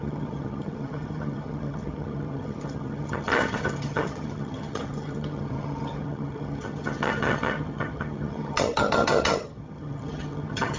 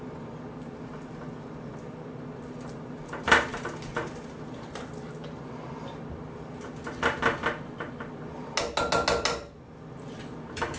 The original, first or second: second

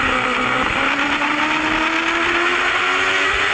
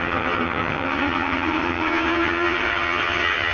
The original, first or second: first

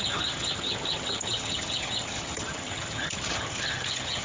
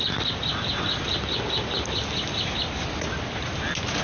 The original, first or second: second